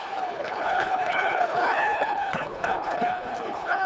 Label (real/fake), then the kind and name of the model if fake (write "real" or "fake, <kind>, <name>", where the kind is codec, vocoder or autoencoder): fake, codec, HILCodec